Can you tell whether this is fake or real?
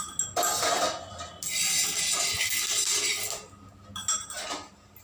real